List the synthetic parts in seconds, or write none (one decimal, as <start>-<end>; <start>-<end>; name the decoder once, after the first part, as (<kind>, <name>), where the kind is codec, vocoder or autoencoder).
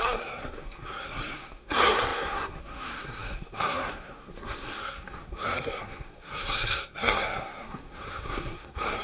0.0-9.0 (codec, SNAC)